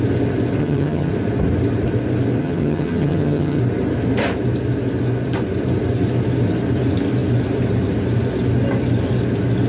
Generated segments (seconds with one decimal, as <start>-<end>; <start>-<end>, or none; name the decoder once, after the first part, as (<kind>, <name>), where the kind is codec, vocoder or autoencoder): 0.6-1.1 (vocoder, HiFi-GAN); 2.4-3.6